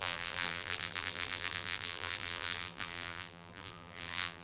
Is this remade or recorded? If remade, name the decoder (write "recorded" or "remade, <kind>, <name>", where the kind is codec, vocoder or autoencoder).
remade, vocoder, BigVGAN v2